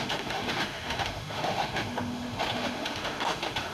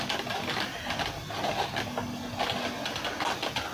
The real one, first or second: second